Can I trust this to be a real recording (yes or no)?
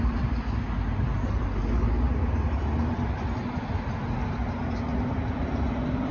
yes